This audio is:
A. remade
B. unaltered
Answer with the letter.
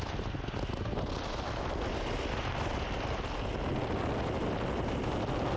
B